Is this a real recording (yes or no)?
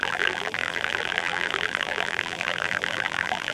no